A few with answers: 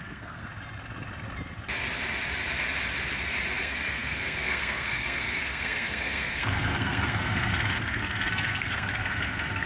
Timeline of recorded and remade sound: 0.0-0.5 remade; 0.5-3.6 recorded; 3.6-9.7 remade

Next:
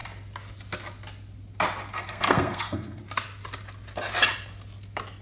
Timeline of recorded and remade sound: 0.0-1.9 recorded; 1.9-3.0 remade; 3.0-5.2 recorded

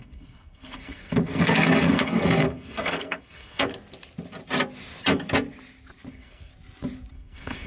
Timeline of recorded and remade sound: 0.0-3.7 remade; 3.7-6.1 recorded; 6.1-6.5 remade; 6.5-7.1 recorded; 7.1-7.7 remade

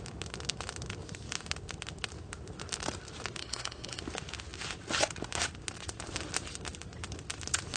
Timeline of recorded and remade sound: 0.0-3.4 recorded; 3.4-4.0 remade; 4.0-7.8 recorded